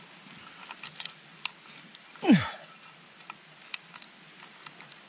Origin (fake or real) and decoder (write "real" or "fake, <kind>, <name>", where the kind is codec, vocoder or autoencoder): real